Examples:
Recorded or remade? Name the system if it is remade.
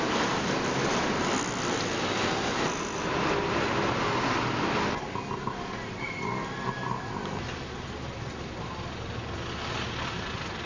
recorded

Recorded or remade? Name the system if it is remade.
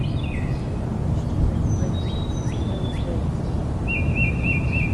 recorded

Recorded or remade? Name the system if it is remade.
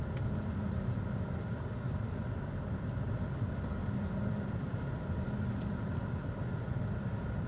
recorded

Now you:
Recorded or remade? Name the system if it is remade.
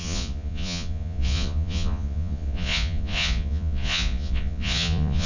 remade, vocoder, Vocos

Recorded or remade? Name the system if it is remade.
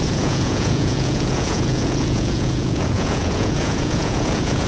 remade, vocoder, Vocos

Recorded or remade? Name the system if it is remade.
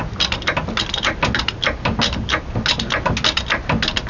recorded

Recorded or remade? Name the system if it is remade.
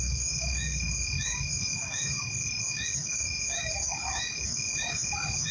remade, autoencoder, DAC-VAE